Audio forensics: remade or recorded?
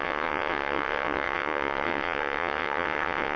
remade